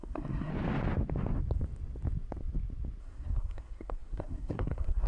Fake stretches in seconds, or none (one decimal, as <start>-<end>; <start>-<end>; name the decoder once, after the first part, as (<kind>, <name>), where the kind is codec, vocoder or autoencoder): 0.0-0.5 (codec, SNAC); 3.0-5.1